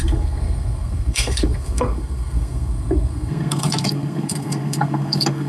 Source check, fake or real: fake